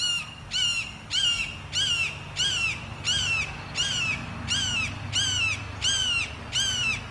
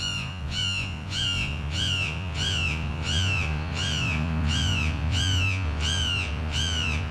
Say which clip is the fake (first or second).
second